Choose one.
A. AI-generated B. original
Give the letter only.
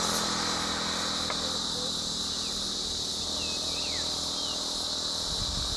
B